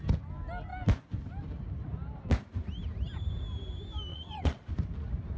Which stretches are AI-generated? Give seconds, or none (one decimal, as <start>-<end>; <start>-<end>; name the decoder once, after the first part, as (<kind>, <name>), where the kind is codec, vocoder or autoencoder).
4.1-4.7 (vocoder, WaveNeXt)